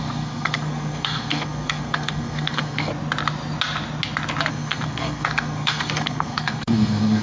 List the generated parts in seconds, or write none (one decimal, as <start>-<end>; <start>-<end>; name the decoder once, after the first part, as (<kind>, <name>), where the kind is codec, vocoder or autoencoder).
0.0-2.9 (codec, SNAC); 4.5-7.2